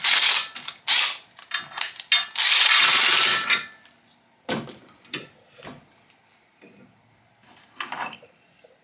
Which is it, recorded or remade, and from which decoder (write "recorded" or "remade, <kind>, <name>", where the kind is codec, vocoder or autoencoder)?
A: recorded